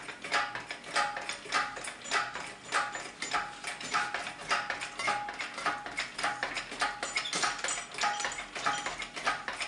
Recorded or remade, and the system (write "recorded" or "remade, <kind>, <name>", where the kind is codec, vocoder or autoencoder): recorded